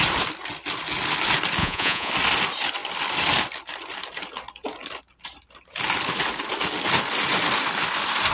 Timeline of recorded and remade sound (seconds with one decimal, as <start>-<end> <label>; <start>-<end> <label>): 0.0-1.6 recorded; 1.6-2.1 remade; 2.1-8.3 recorded